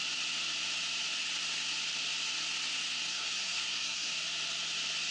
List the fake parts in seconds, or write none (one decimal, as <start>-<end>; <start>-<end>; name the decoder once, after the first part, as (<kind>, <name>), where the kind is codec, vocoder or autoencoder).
3.1-4.1 (codec, SNAC)